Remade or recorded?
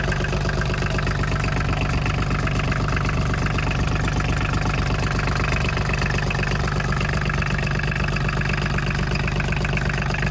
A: recorded